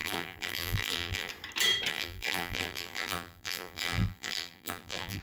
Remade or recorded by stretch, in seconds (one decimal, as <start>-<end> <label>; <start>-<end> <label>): 0.0-1.3 remade; 1.3-1.9 recorded; 1.9-5.2 remade